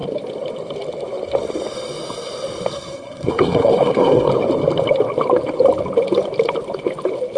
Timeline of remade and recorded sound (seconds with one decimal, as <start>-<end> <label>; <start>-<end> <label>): 0.0-2.7 recorded; 2.7-4.3 remade; 4.3-7.4 recorded